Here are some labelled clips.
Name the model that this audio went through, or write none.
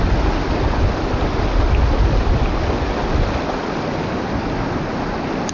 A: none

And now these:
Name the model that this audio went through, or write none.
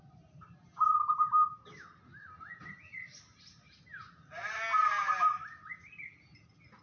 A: none